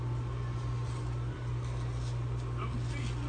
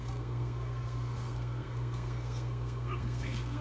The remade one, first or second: second